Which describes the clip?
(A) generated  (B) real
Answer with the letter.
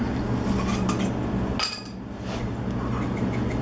B